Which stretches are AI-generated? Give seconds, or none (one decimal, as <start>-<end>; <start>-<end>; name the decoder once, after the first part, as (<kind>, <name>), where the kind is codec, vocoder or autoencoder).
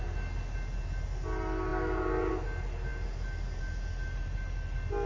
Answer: none